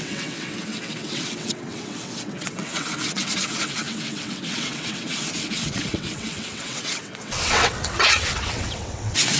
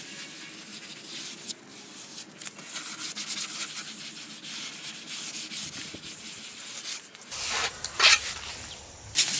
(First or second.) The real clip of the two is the second